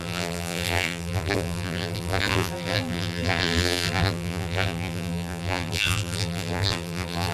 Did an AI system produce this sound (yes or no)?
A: yes